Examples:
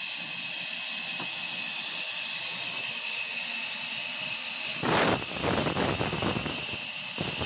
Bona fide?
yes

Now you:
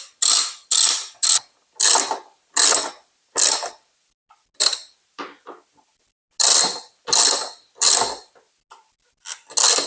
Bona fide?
yes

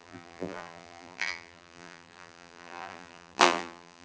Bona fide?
no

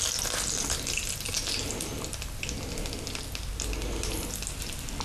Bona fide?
yes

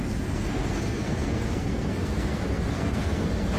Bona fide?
no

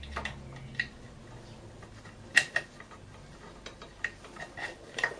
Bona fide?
yes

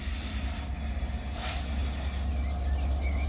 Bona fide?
yes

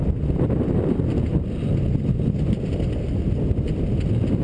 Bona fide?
yes